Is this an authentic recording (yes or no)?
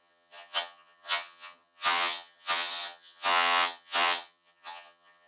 no